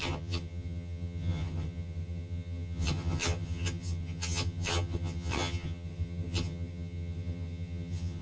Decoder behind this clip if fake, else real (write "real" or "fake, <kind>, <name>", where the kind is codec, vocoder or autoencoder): fake, vocoder, HiFi-GAN